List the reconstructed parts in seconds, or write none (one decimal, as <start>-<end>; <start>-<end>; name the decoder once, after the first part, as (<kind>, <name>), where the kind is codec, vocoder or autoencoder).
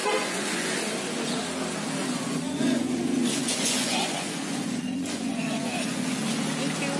0.0-0.8 (vocoder, Vocos); 2.0-6.2